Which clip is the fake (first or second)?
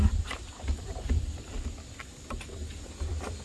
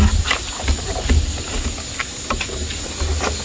first